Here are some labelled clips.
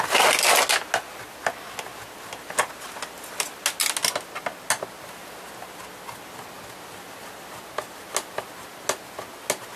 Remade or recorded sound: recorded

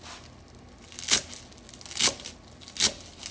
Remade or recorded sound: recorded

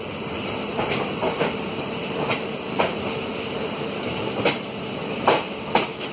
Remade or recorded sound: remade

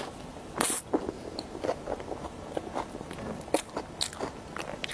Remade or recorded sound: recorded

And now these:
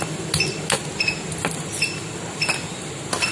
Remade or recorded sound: recorded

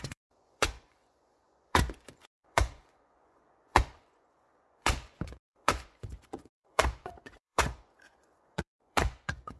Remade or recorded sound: remade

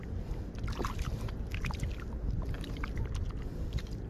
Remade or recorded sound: recorded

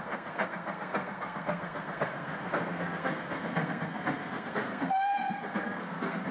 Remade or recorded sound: remade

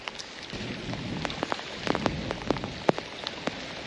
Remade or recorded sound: recorded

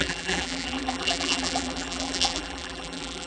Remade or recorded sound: remade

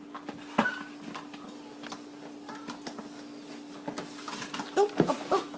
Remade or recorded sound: recorded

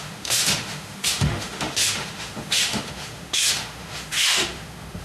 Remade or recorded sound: remade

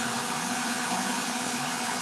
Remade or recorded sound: remade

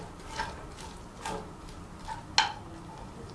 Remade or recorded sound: recorded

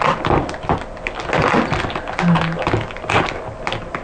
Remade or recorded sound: recorded